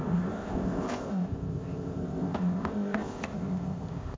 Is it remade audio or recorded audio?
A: remade